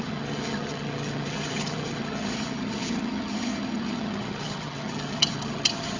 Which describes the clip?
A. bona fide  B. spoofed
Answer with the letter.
B